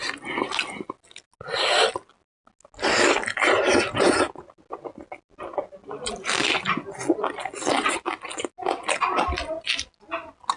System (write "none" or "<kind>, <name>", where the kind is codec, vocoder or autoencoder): none